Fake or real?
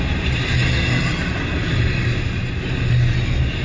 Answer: real